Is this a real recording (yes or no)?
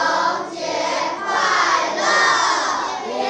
yes